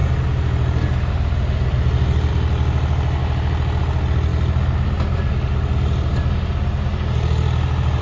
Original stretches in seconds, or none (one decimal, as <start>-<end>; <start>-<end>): 0.0-8.0